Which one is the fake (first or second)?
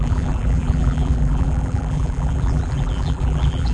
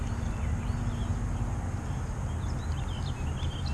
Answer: first